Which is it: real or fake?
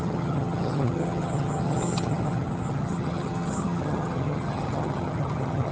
fake